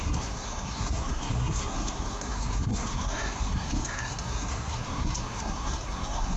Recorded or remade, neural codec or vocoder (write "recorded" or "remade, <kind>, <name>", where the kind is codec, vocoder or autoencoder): remade, codec, SNAC